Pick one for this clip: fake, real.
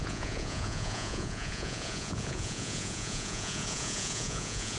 fake